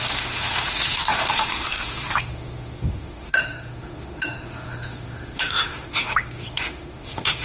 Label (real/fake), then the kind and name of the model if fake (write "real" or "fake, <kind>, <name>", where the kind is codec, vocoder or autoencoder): fake, autoencoder, DAC-VAE